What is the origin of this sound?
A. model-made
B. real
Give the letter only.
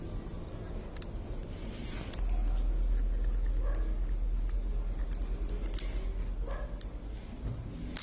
B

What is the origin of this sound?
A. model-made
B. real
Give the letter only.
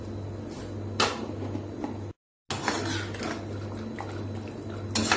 B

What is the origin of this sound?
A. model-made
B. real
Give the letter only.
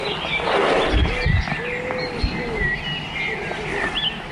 B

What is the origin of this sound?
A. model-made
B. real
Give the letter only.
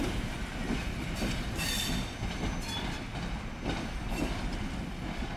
B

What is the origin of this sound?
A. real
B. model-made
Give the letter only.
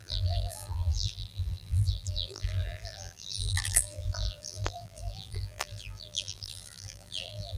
B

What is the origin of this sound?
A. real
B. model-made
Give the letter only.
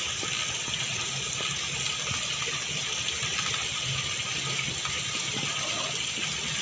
A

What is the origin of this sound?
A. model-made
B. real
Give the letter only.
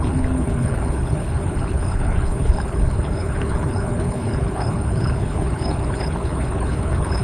A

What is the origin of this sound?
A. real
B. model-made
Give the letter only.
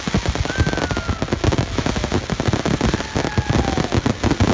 A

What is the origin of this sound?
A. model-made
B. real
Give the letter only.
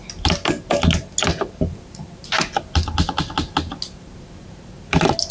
B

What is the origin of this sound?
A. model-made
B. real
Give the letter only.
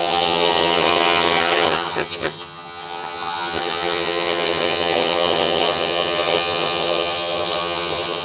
A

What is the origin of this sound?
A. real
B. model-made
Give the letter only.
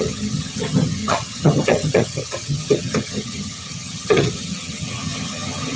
B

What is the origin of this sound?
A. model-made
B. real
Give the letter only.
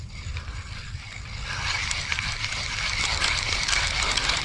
B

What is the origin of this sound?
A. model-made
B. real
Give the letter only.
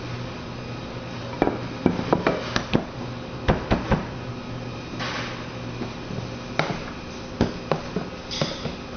B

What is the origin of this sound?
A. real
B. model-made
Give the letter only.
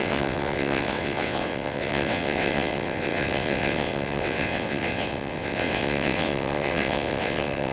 B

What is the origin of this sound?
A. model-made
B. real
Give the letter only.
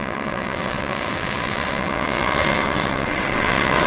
A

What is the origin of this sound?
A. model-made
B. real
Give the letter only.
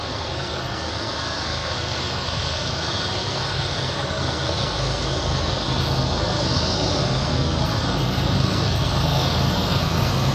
A